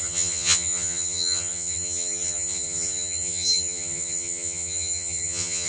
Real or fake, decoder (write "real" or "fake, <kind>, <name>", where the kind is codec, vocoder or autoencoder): fake, vocoder, HiFi-GAN